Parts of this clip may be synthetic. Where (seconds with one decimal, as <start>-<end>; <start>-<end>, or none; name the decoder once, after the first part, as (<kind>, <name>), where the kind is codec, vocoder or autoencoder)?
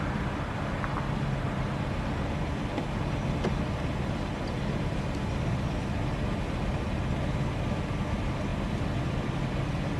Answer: none